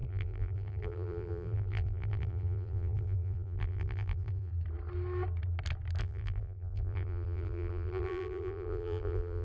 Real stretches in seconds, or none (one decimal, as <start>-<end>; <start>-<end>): 4.5-6.0